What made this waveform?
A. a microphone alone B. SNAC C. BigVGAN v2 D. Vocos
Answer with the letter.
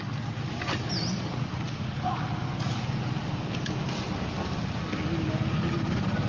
A